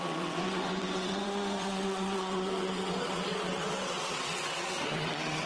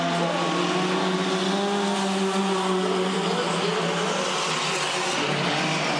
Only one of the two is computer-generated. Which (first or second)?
first